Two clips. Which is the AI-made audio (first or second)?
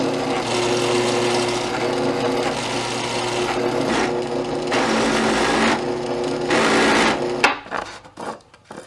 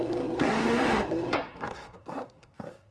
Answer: second